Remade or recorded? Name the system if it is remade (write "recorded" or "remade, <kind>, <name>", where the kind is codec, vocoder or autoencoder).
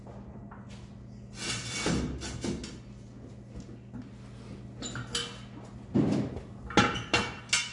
recorded